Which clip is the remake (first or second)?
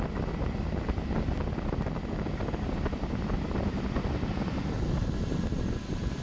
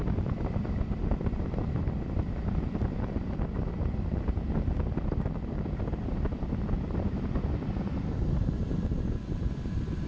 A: second